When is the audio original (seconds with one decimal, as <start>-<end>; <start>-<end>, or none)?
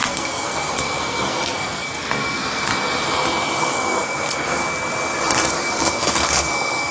2.7-3.6; 4.6-5.5